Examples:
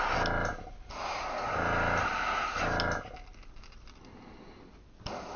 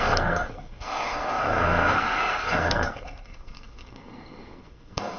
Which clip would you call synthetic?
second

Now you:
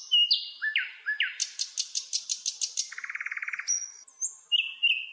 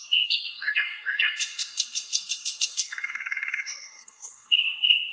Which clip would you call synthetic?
second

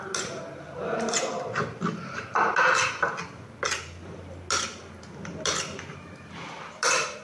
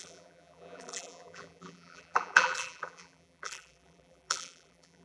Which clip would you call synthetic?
second